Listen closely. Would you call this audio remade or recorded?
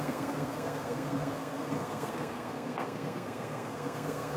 remade